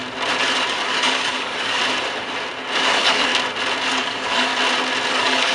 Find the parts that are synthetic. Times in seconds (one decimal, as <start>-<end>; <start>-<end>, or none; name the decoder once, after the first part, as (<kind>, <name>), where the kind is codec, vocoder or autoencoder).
0.7-1.8 (codec, DAC); 2.8-3.3; 3.9-4.5; 5.1-5.5